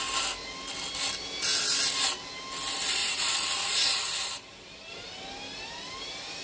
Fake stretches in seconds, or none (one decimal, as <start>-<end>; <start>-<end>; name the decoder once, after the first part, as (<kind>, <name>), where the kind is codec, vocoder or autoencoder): 3.0-3.8 (vocoder, Vocos)